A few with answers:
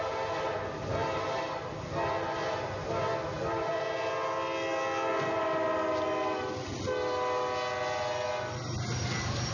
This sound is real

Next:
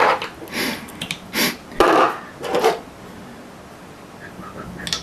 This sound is real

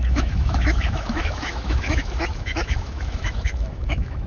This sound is fake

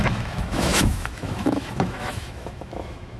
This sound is fake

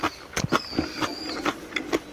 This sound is real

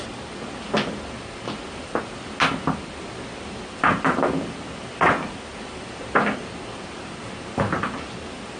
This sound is real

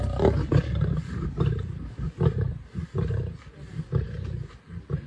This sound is real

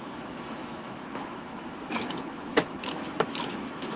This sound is fake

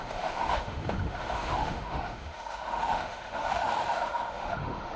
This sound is fake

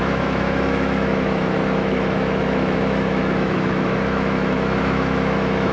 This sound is fake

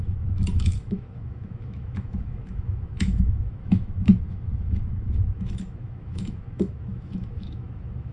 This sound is fake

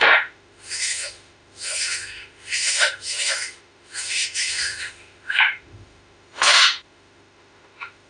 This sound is fake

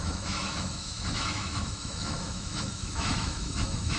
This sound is fake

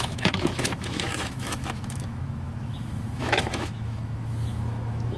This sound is fake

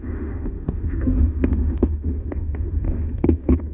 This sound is fake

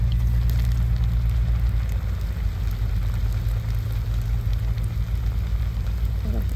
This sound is real